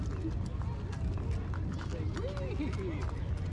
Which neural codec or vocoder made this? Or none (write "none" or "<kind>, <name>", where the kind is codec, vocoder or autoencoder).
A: none